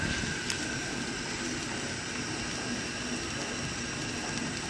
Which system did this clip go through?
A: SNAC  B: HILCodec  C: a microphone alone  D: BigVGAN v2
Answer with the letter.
C